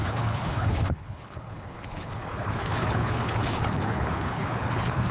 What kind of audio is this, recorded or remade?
remade